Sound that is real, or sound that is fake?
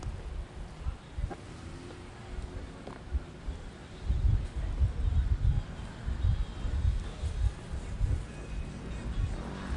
real